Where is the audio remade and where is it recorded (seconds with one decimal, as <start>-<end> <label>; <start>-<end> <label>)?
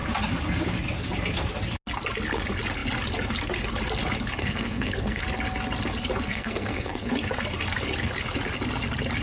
0.0-4.4 recorded; 4.4-5.2 remade; 5.2-6.3 recorded; 6.3-7.1 remade; 7.1-9.2 recorded